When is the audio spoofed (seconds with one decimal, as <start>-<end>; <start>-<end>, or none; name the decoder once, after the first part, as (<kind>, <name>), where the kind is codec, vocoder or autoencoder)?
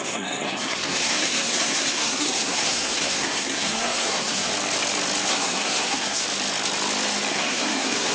0.0-4.5 (codec, SNAC); 5.3-6.2; 7.3-8.1